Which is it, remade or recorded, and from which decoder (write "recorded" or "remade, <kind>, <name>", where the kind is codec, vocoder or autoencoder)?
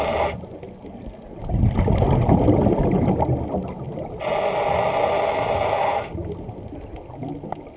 recorded